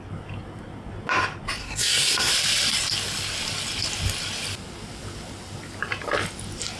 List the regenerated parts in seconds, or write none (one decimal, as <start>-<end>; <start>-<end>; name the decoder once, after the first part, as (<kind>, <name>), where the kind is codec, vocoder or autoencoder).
1.6-2.3 (codec, SNAC)